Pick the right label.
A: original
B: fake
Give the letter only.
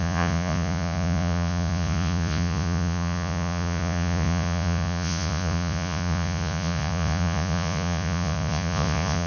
B